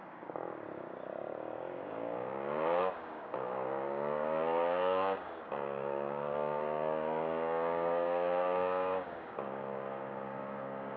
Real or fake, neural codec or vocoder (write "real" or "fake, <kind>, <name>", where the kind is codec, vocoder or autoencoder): fake, codec, DAC